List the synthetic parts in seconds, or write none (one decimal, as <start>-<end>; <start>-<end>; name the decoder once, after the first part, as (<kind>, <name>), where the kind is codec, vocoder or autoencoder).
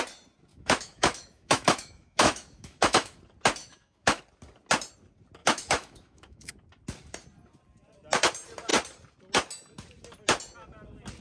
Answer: 0.5-3.2 (autoencoder, DAC-VAE); 3.6-4.2; 5.4-6.5